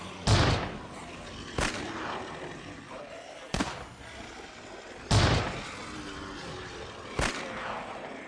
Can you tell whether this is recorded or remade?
recorded